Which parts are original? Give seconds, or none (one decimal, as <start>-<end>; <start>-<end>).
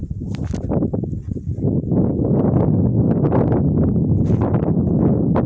1.9-2.9; 5.1-5.5